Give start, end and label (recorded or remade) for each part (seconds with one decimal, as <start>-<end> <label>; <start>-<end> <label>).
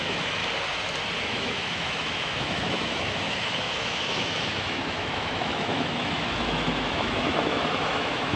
0.0-0.4 remade; 0.4-1.2 recorded; 1.2-8.4 remade